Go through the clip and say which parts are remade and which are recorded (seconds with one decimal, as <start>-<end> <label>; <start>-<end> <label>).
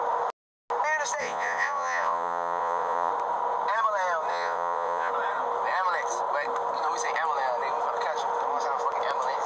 0.0-1.2 recorded; 1.2-3.1 remade; 3.1-4.3 recorded; 4.3-5.1 remade; 5.1-9.5 recorded